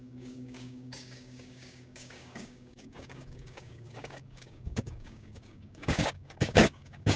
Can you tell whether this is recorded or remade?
remade